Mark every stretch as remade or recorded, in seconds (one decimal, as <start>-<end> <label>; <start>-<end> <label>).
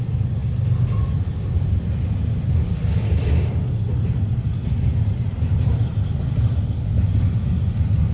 0.0-8.1 recorded